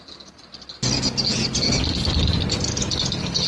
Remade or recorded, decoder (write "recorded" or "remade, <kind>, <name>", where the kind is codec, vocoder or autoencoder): recorded